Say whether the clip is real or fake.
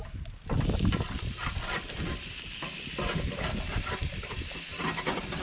real